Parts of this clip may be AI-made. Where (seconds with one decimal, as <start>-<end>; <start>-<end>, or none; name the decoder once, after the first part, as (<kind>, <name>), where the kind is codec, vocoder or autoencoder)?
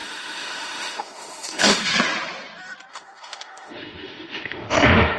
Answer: 0.0-1.9 (autoencoder, DAC-VAE); 2.9-5.2